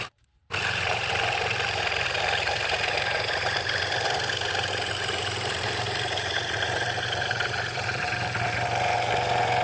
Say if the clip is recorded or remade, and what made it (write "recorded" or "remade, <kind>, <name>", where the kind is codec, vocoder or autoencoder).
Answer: remade, vocoder, BigVGAN v2